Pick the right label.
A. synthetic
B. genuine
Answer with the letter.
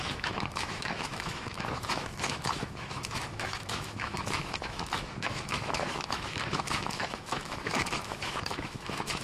A